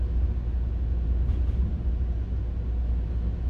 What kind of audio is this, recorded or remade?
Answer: recorded